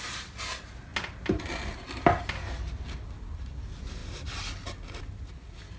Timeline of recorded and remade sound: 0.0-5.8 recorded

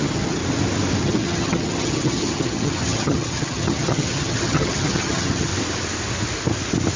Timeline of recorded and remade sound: 0.0-0.4 remade; 0.4-1.0 recorded; 1.0-5.5 remade; 5.5-7.0 recorded

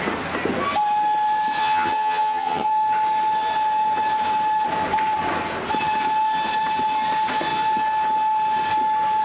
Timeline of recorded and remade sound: 0.0-1.6 recorded; 1.6-2.7 remade; 2.7-9.2 recorded

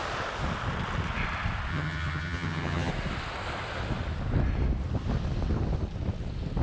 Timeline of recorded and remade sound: 0.0-1.7 recorded; 1.7-2.9 remade; 2.9-6.6 recorded

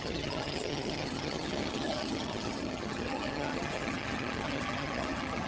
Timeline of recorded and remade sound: 0.0-5.5 remade

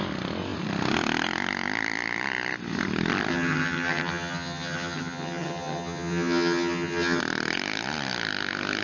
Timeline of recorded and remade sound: 0.0-3.3 recorded; 3.3-7.2 remade; 7.2-8.8 recorded

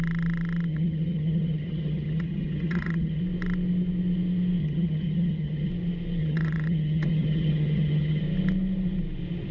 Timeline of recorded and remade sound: 0.0-0.7 recorded; 0.7-3.2 remade; 3.2-4.6 recorded; 4.6-5.7 remade; 5.7-6.2 recorded; 6.2-8.2 remade; 8.2-9.5 recorded

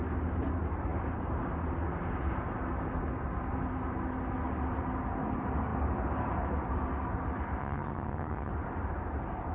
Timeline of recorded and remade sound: 0.0-7.6 recorded; 7.6-8.5 remade; 8.5-9.5 recorded